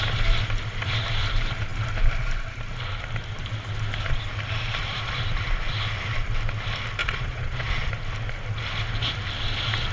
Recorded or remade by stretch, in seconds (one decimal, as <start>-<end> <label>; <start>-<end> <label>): 0.0-7.0 recorded; 7.0-7.9 remade; 7.9-9.9 recorded